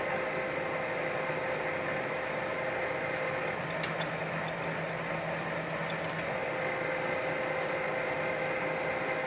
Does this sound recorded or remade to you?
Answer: recorded